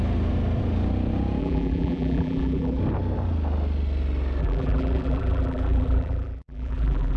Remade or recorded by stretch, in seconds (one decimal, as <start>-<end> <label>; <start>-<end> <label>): 0.0-1.4 recorded; 1.4-2.8 remade; 2.8-4.4 recorded; 4.4-7.2 remade

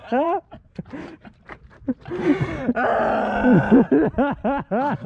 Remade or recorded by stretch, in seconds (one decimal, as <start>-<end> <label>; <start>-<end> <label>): 0.0-3.1 remade; 3.1-5.1 recorded

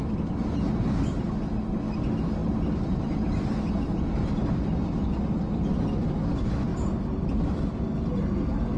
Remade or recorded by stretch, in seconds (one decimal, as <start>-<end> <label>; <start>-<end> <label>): 0.0-2.4 recorded; 2.4-3.6 remade; 3.6-6.7 recorded; 6.7-7.8 remade; 7.8-8.8 recorded